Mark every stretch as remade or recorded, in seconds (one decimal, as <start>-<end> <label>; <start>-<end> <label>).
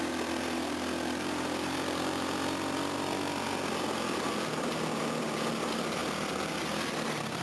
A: 0.0-7.4 recorded